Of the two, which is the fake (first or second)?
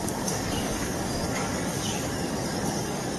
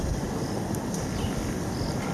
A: first